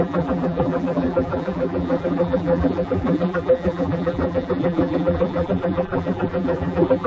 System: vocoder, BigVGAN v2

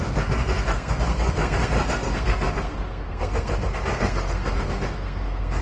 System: codec, SNAC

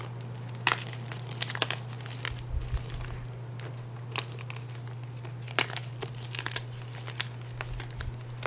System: none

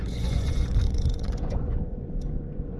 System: vocoder, Vocos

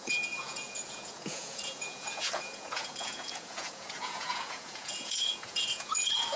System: vocoder, Vocos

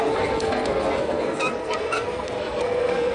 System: codec, SNAC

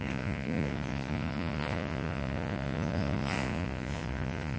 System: vocoder, Vocos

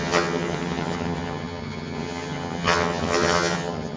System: vocoder, HiFi-GAN